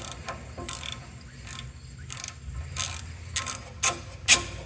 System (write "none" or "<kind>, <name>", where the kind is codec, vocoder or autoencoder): none